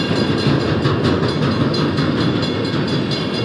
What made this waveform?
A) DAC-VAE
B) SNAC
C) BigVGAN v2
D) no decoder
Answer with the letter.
D